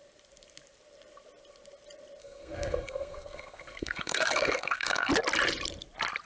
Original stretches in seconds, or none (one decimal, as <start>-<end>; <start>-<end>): 0.0-2.2; 5.1-6.3